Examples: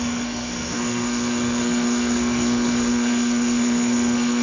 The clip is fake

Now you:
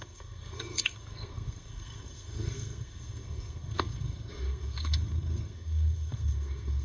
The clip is fake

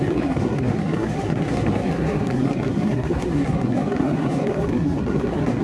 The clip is fake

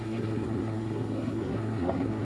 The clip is fake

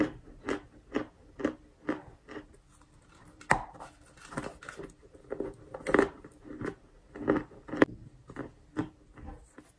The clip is real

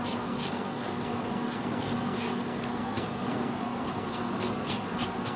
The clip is fake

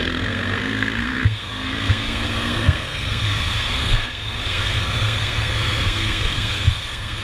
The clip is fake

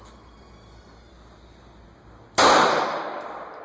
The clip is real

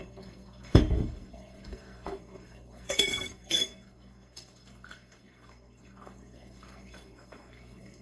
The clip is fake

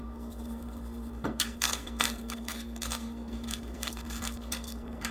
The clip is fake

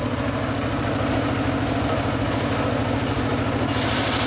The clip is real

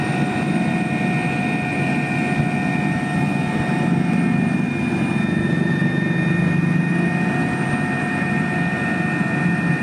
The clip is real